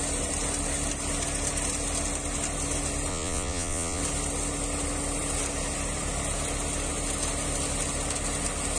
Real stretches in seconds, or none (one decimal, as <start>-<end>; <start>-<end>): 0.0-3.1; 4.0-8.8